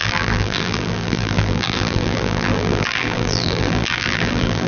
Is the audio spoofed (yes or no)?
yes